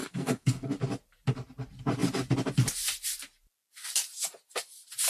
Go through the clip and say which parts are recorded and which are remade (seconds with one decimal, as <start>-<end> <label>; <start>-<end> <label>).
0.0-0.7 remade; 0.7-5.1 recorded